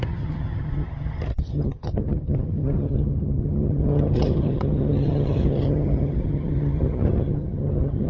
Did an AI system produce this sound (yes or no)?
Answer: yes